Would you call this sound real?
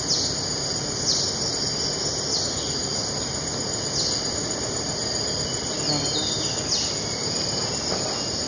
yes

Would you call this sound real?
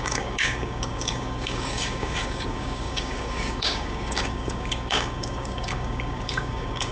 no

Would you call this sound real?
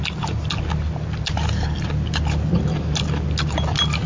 yes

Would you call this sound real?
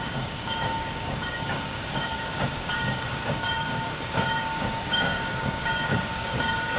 no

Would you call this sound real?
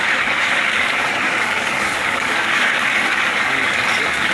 no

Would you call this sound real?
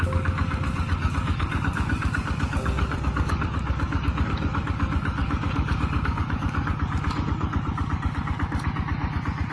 no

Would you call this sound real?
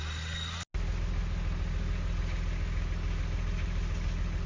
yes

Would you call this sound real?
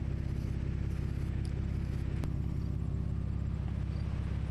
yes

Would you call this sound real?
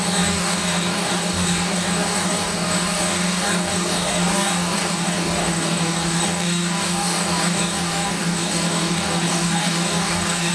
no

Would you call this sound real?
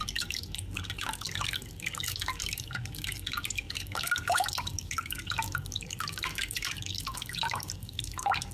no